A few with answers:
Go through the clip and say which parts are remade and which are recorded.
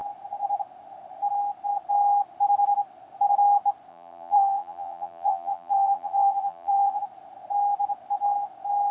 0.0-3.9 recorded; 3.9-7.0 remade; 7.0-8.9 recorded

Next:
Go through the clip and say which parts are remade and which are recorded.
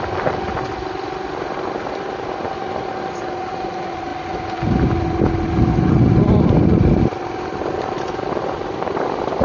0.0-9.4 recorded